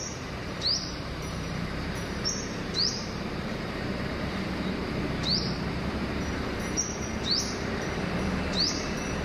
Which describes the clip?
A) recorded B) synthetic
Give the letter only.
B